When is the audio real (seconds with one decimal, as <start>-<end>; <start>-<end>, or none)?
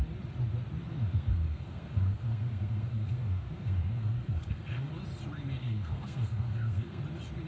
0.0-0.9; 4.9-5.6; 7.0-7.5